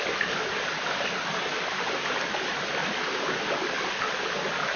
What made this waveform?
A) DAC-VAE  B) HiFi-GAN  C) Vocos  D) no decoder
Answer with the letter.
D